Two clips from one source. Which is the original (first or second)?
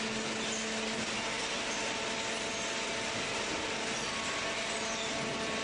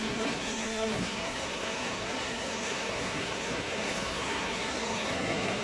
first